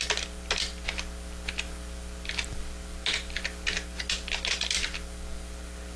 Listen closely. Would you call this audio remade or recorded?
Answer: recorded